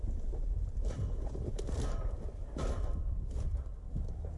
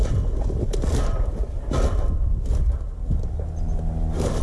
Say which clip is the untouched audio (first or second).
second